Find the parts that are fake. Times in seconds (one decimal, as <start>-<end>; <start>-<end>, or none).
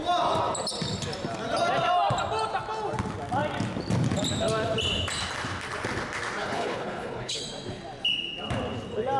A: 6.4-7.4